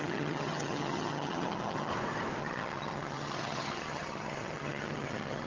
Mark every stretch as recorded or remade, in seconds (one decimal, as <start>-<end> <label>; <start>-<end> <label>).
0.0-1.9 remade; 1.9-2.4 recorded; 2.4-5.5 remade